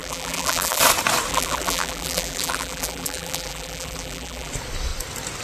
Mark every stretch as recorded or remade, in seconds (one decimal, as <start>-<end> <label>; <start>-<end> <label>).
0.0-0.8 remade; 0.8-1.3 recorded; 1.3-4.5 remade; 4.5-5.4 recorded